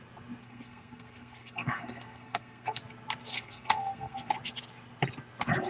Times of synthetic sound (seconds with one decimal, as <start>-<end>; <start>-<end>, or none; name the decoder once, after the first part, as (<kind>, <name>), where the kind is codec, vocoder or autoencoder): 0.4-2.8 (codec, SNAC); 3.3-4.3